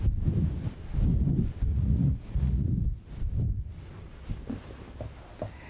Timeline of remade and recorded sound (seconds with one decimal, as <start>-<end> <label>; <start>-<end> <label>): 0.0-1.7 recorded; 1.7-2.7 remade; 2.7-5.7 recorded